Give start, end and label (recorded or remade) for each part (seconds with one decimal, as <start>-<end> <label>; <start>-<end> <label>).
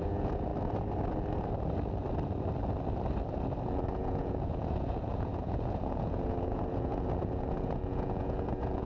0.0-0.5 remade; 0.5-3.9 recorded; 3.9-8.9 remade